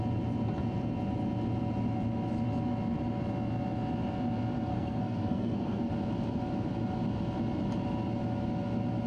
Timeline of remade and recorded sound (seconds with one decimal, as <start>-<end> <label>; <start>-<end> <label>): 0.0-4.7 recorded; 4.7-5.9 remade; 5.9-9.1 recorded